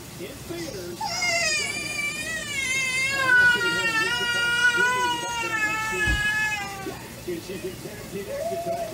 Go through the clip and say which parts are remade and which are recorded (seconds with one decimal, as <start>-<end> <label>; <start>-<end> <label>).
0.0-8.9 remade